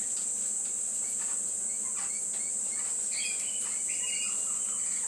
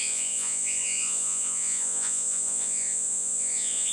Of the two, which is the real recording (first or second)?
first